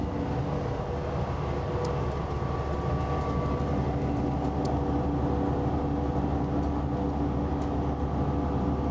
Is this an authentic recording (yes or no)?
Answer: yes